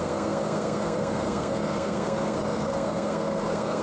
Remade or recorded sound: remade